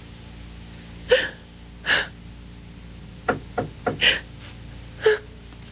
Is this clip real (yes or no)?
yes